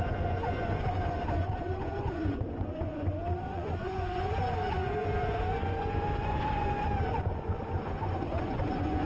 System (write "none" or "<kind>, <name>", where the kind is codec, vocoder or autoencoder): vocoder, Vocos